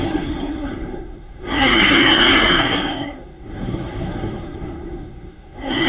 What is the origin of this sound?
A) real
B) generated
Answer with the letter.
B